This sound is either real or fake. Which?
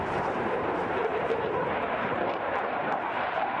fake